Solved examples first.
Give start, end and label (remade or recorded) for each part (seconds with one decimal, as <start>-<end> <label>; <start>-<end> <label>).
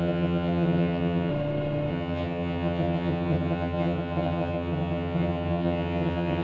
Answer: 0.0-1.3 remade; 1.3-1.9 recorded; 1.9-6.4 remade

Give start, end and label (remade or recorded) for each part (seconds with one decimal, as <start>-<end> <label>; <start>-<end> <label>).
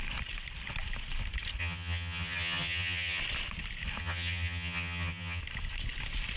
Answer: 0.0-1.6 recorded; 1.6-3.2 remade; 3.2-4.0 recorded; 4.0-5.4 remade; 5.4-6.4 recorded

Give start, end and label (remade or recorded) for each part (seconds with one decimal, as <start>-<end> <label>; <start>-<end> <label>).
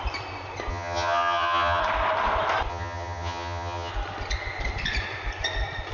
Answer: 0.0-0.7 recorded; 0.7-1.8 remade; 1.8-2.7 recorded; 2.7-3.9 remade; 3.9-5.9 recorded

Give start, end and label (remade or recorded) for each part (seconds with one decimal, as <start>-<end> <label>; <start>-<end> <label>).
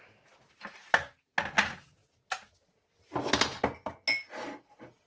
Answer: 0.0-5.1 recorded